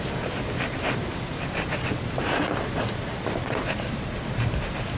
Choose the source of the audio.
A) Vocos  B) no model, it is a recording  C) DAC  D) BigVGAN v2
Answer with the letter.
D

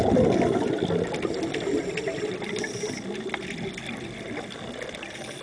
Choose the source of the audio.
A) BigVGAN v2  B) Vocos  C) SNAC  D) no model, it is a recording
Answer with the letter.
D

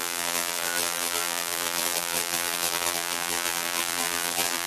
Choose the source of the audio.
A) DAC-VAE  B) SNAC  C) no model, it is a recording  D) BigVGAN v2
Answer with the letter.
D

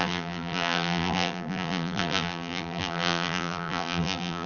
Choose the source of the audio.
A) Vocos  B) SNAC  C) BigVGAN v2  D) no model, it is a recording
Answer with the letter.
C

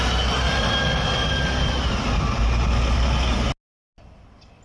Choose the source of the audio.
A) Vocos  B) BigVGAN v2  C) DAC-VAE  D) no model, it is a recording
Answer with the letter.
D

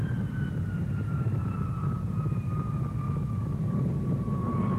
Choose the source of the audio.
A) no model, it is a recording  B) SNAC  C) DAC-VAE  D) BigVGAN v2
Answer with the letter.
D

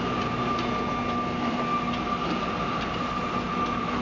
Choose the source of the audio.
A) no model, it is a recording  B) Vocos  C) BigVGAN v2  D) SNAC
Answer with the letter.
A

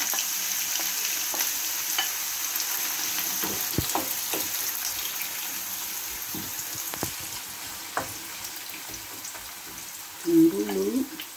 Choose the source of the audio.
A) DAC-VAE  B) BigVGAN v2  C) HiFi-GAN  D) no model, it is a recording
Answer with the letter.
D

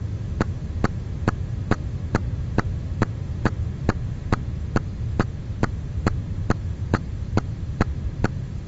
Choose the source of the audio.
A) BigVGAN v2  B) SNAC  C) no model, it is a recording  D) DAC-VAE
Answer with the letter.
A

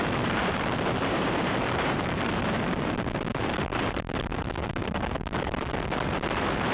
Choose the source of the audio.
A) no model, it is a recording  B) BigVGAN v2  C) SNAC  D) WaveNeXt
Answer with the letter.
B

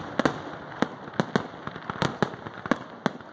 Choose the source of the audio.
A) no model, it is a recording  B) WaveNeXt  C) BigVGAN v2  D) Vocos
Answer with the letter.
A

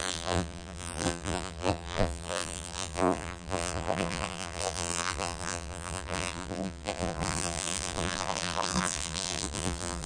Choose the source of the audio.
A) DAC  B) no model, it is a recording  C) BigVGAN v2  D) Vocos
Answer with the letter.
C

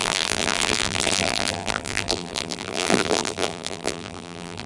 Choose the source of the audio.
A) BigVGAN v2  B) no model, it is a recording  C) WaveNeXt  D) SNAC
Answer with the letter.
A